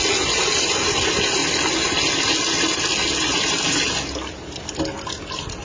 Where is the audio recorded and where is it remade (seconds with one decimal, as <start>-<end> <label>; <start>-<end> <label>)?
0.0-5.6 recorded